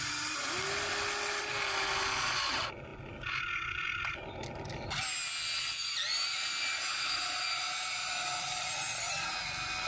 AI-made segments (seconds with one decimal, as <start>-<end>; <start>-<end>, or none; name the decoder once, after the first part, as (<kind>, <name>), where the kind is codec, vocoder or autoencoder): none